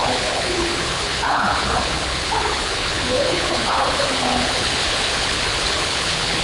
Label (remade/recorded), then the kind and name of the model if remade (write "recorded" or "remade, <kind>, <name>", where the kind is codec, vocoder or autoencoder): remade, codec, HILCodec